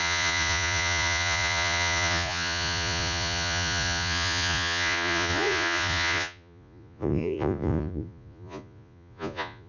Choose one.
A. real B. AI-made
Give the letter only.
B